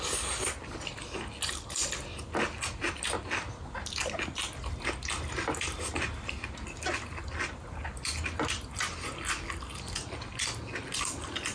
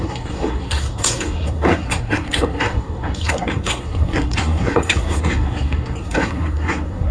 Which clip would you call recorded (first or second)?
first